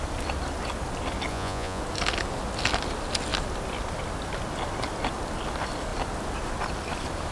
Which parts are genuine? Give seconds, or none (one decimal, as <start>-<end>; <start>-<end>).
0.0-1.3; 1.8-7.3